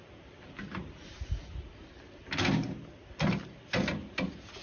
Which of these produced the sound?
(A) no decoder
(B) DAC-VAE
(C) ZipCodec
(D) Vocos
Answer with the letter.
A